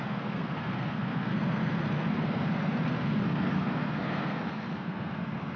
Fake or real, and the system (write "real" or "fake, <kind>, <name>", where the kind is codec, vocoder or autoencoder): fake, codec, SNAC